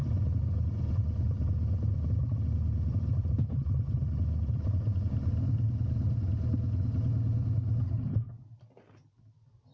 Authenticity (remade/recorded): recorded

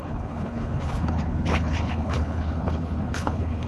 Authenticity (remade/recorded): remade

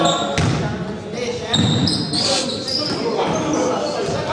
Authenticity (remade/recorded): recorded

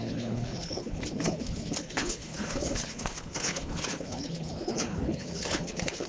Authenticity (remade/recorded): remade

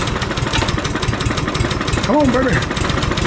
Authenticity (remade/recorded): recorded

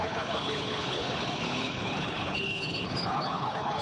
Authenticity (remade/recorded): remade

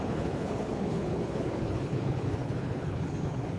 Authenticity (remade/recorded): remade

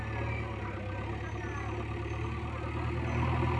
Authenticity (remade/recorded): recorded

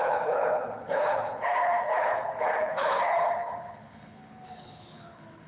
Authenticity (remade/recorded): remade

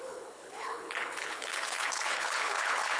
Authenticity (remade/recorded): remade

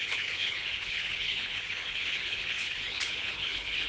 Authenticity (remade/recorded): remade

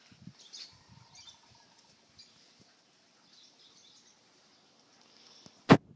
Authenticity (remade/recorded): recorded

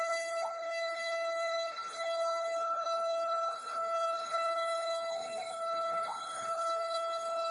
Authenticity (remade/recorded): remade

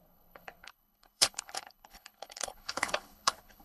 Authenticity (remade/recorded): remade